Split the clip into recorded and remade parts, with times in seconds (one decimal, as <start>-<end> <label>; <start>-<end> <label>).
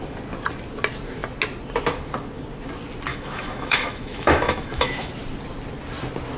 0.0-3.1 recorded; 3.1-5.1 remade; 5.1-6.4 recorded